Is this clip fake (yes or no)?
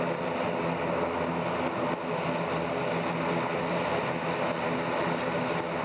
no